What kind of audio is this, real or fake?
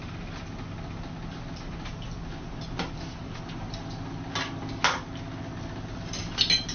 real